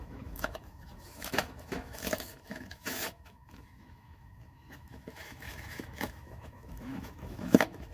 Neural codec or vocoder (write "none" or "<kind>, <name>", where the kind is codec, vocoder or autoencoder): autoencoder, DAC-VAE